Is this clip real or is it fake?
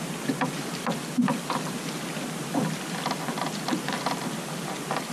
real